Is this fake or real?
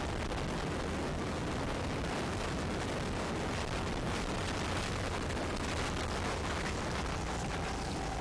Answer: real